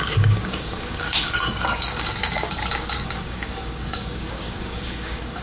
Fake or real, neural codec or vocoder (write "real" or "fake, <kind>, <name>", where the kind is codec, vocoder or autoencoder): fake, codec, DAC